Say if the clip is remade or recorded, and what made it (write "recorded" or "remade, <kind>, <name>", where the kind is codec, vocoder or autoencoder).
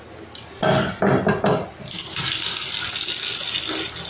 recorded